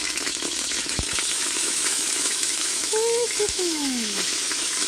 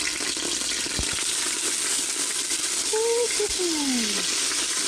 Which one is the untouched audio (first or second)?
second